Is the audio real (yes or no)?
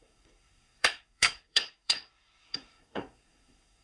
no